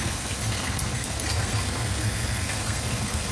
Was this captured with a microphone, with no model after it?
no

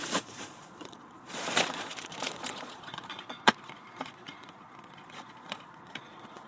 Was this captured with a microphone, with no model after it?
no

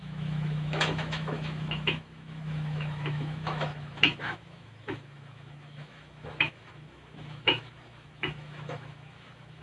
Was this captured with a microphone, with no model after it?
no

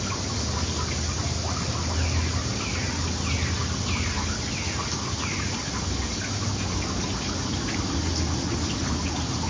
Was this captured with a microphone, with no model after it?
yes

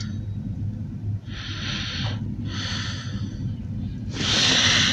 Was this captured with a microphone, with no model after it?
yes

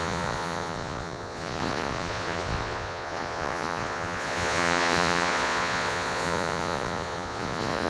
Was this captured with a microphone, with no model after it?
no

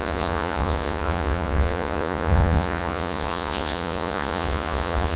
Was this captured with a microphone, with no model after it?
no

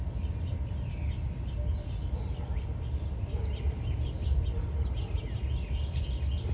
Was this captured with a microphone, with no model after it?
yes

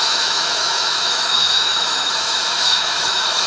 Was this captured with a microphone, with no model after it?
no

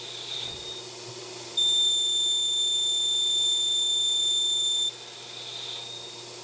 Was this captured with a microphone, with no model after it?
yes